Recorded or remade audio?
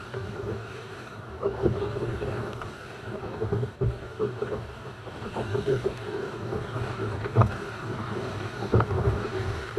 remade